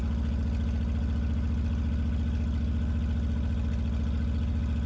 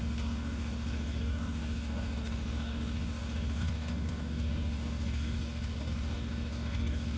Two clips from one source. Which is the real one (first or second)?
first